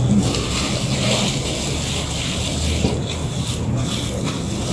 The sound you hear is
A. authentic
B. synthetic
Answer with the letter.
A